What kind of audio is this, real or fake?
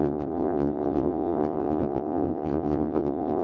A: fake